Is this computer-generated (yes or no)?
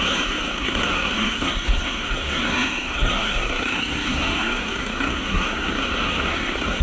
yes